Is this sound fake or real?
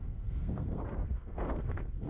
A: fake